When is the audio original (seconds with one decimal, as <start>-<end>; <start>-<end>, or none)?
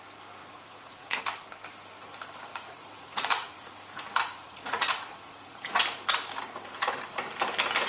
0.0-0.4; 1.2-2.5; 3.7-4.4; 5.8-7.9